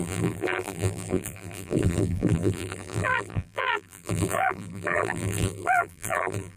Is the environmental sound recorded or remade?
remade